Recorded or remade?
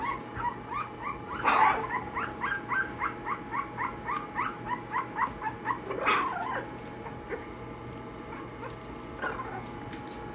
recorded